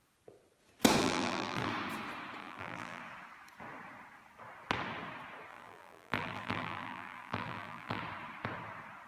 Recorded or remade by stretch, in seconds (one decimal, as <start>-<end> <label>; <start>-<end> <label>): 0.0-1.0 recorded; 1.0-1.7 remade; 1.7-2.4 recorded; 2.4-3.0 remade; 3.0-5.5 recorded; 5.5-8.0 remade; 8.0-9.1 recorded